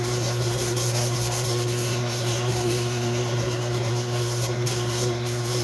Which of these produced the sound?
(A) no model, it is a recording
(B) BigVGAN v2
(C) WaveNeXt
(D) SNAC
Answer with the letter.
D